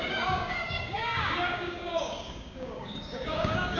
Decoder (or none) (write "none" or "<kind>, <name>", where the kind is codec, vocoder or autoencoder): codec, DAC